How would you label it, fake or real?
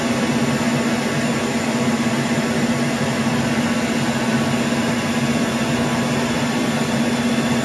real